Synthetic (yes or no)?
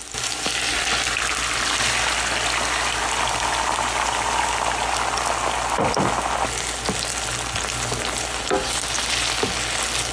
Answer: no